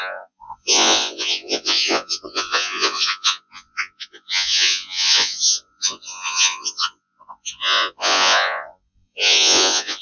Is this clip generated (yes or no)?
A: yes